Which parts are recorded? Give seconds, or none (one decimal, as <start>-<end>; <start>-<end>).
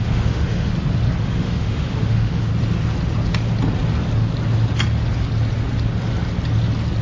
0.7-1.2; 2.5-7.0